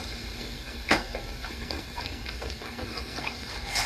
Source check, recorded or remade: remade